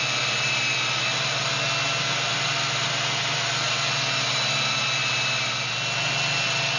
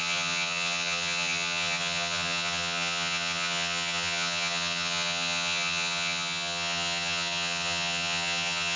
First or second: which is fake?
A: second